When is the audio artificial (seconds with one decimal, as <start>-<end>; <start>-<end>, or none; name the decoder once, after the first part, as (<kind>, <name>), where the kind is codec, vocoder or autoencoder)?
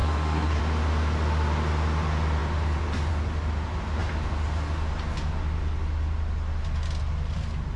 0.0-0.6 (codec, SNAC)